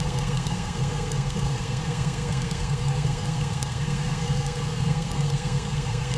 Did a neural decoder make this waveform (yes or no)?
yes